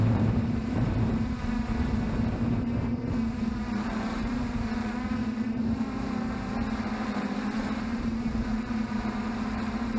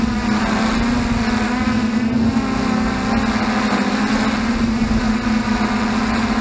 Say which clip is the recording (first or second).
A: second